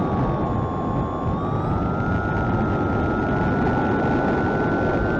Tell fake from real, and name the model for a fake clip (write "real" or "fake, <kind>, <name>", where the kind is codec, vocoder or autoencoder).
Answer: real